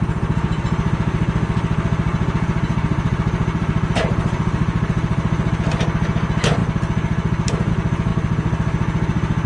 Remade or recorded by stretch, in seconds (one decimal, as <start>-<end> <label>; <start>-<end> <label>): 0.0-2.1 recorded; 2.1-5.5 remade; 5.5-9.5 recorded